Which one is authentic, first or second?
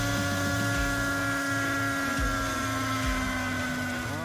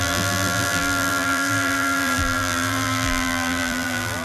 first